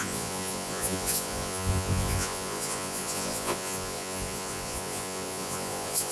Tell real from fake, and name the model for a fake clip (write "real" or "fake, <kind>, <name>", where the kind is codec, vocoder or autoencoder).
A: fake, vocoder, Vocos